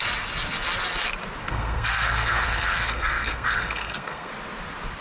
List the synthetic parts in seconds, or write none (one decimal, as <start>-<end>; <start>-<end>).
1.4-4.3